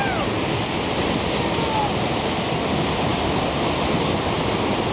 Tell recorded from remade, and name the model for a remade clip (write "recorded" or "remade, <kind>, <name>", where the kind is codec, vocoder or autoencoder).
recorded